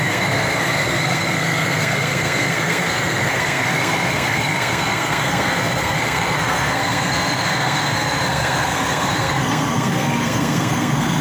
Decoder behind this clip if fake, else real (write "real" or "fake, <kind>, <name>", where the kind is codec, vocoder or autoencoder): fake, codec, SNAC